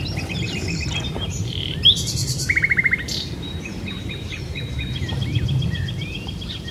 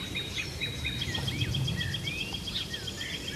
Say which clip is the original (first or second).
second